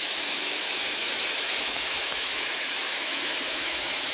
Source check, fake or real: fake